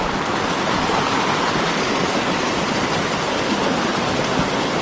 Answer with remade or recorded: recorded